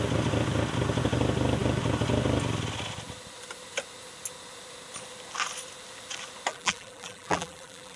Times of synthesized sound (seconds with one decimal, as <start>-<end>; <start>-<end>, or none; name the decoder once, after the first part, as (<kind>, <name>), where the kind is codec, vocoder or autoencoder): 6.5-8.0 (vocoder, BigVGAN v2)